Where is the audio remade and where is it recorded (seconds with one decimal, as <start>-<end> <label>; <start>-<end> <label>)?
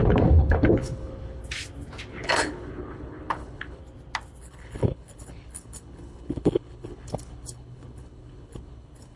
0.0-1.4 remade; 1.4-2.1 recorded; 2.1-3.8 remade; 3.8-4.4 recorded; 4.4-9.2 remade